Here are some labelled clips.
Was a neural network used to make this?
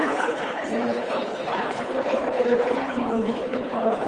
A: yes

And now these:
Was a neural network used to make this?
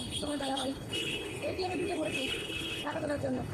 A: yes